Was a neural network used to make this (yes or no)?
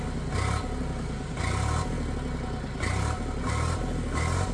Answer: no